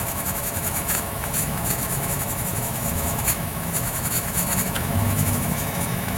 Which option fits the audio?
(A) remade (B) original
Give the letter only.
A